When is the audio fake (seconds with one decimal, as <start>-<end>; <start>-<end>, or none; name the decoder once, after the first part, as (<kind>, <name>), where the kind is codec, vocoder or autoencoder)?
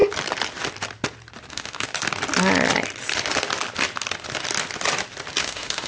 1.5-1.9 (autoencoder, DAC-VAE); 5.4-5.9